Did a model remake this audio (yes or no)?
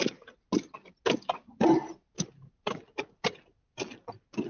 no